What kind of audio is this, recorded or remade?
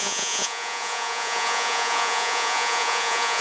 remade